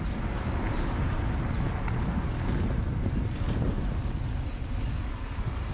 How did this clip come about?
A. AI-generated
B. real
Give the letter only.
B